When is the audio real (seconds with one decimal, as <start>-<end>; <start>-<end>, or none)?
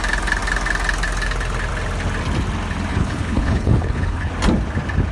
0.0-2.9; 4.3-5.1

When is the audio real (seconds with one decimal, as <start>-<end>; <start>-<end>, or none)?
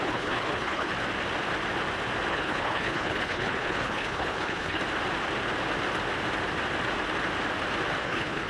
0.9-2.3; 4.8-8.0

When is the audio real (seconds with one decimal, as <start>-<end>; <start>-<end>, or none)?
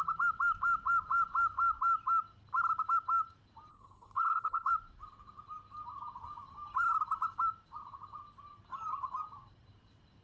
0.0-3.7; 4.7-10.2